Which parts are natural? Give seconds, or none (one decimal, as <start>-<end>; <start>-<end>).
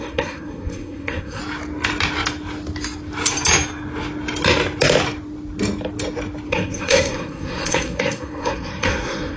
1.4-6.5